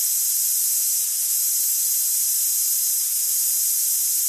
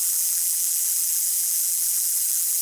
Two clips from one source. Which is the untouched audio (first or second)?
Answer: first